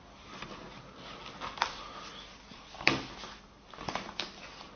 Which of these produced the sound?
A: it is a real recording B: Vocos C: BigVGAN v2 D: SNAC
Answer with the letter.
A